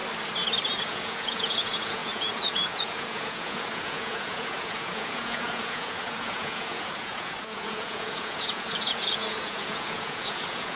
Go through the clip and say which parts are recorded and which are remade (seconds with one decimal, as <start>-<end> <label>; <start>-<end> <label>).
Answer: 0.0-0.8 recorded; 0.8-10.8 remade